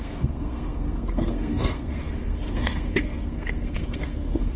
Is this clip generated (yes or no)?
yes